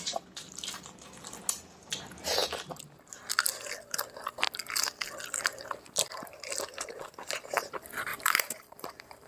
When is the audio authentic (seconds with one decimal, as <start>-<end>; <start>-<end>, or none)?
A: 0.0-8.1